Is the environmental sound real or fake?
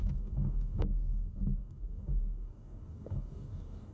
fake